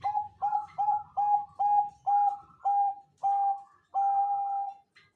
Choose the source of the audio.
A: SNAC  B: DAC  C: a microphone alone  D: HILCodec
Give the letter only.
C